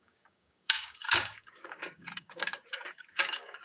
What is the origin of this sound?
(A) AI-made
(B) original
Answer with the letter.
A